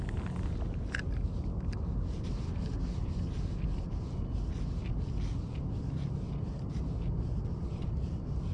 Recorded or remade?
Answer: recorded